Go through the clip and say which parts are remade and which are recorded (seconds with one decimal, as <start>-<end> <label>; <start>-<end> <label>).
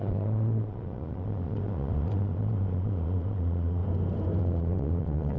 0.0-3.8 remade; 3.8-4.4 recorded; 4.4-5.4 remade